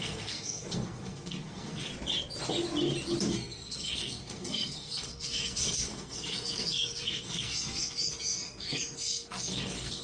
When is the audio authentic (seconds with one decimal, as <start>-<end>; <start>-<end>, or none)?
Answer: 1.9-3.3